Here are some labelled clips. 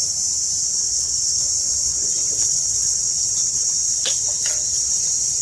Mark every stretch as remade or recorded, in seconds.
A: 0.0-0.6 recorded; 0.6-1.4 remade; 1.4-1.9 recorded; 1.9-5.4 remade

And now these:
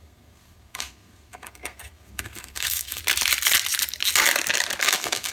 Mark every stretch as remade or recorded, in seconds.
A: 0.0-3.0 remade; 3.0-4.8 recorded; 4.8-5.3 remade